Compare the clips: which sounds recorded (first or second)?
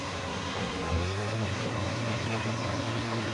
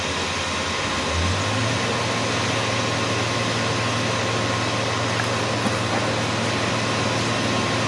second